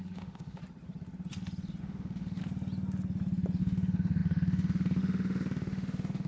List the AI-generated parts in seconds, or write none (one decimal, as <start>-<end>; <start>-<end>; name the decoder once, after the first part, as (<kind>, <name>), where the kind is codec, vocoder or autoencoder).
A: 0.0-0.6 (autoencoder, DAC-VAE); 1.8-2.4; 3.6-6.3